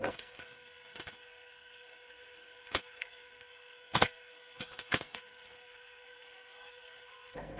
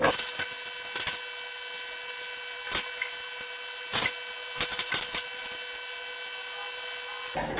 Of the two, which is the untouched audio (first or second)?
second